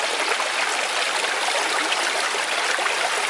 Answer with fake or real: real